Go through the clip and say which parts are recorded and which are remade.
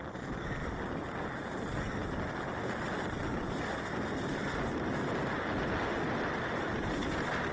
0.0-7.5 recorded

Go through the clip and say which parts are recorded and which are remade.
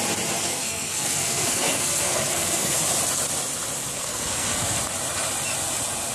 0.0-0.4 recorded; 0.4-2.8 remade; 2.8-3.8 recorded; 3.8-4.8 remade; 4.8-6.1 recorded